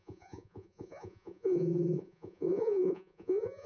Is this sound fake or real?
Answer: fake